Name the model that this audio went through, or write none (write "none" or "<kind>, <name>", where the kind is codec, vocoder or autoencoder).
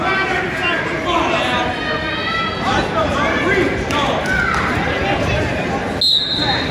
none